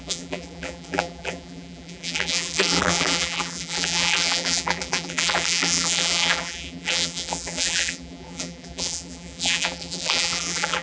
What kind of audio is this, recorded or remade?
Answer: remade